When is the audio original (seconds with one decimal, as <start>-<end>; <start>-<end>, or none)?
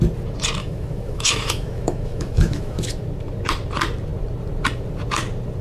0.0-0.6; 3.0-5.6